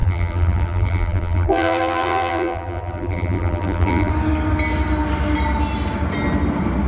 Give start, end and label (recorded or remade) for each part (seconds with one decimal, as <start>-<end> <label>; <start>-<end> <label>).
0.0-4.1 remade; 4.1-6.9 recorded